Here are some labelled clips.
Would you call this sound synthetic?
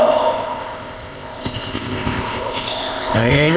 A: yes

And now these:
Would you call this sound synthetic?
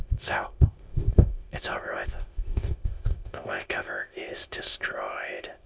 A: yes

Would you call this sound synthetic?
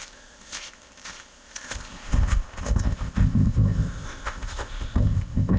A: yes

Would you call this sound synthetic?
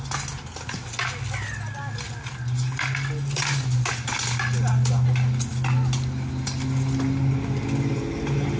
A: no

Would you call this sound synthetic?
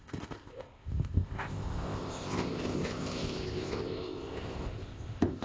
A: yes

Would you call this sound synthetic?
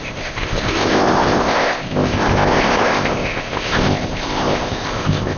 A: yes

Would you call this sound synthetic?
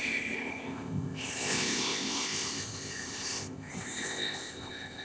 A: yes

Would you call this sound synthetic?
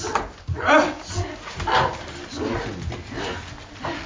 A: no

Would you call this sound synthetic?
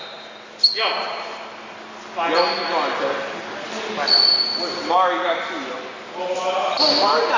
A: no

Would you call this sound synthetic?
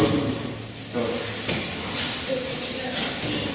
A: no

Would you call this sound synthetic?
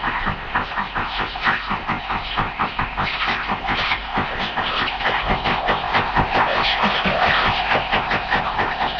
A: yes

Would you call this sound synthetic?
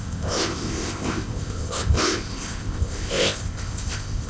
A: yes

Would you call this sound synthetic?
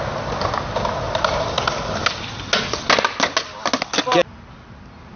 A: no